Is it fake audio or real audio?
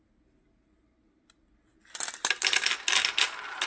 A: real